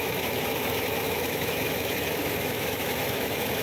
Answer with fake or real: fake